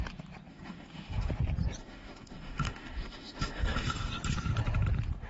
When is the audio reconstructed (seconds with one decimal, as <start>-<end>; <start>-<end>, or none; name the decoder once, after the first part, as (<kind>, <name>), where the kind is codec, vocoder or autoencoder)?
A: 0.5-1.3 (autoencoder, DAC-VAE); 1.8-4.1